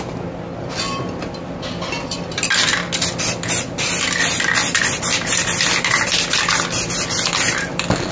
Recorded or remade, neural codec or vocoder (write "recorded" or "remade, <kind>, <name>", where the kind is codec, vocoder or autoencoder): recorded